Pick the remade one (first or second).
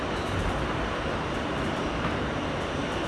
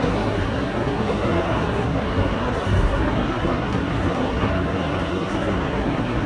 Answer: second